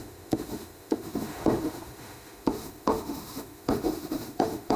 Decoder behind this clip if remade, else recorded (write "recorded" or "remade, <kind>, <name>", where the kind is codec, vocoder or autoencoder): remade, autoencoder, DAC-VAE